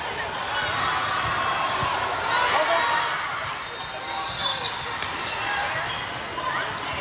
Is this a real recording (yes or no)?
yes